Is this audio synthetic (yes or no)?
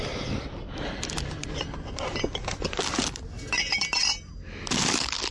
no